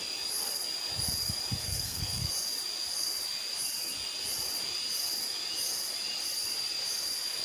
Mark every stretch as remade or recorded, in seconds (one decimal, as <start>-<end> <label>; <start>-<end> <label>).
0.0-1.6 recorded; 1.6-2.3 remade; 2.3-7.4 recorded